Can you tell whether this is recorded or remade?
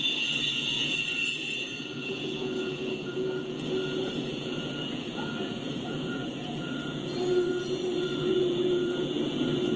remade